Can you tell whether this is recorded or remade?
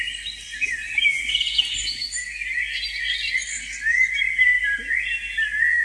recorded